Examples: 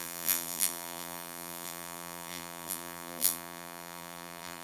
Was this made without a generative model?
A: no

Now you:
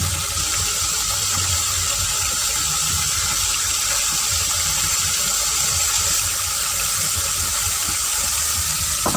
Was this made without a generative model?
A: no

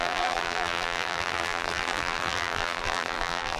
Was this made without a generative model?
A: no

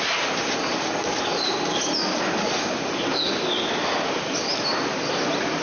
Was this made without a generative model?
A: yes